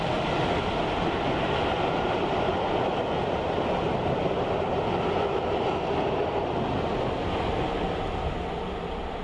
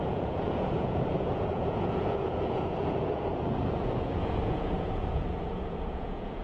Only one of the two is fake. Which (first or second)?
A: second